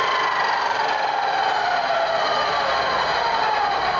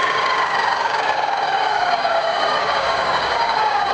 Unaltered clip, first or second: first